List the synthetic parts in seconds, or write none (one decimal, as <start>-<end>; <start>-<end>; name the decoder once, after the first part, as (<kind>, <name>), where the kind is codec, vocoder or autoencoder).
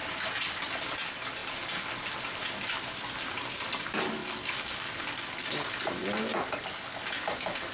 none